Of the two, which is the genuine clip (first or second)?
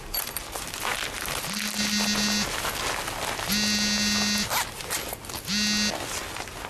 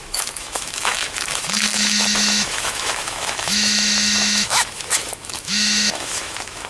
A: first